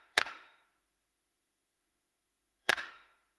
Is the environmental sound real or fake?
fake